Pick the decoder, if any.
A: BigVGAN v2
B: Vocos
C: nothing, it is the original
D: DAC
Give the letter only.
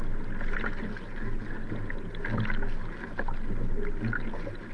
C